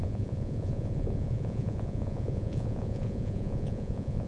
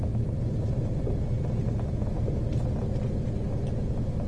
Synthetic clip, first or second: first